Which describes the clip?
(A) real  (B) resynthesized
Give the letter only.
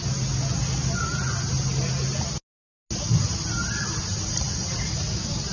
A